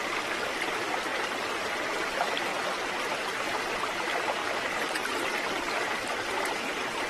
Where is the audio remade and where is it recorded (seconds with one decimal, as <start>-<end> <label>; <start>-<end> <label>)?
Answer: 0.0-0.7 recorded; 0.7-4.4 remade; 4.4-5.5 recorded; 5.5-7.1 remade